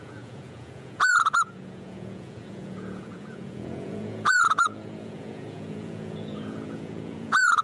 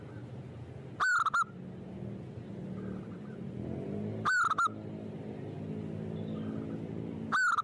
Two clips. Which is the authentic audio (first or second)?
second